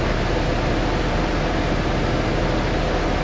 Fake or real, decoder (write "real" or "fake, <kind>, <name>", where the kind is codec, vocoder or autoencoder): real